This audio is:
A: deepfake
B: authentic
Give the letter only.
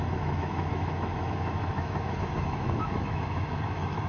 A